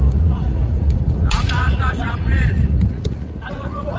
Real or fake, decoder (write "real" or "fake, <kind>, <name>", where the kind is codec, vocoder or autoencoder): fake, vocoder, Vocos